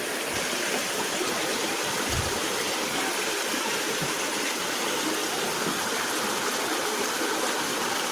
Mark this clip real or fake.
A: real